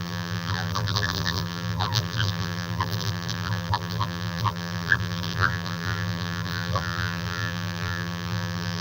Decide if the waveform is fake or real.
fake